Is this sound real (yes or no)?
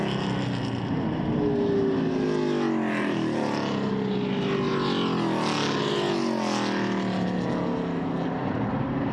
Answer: yes